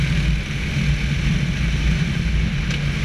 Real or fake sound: real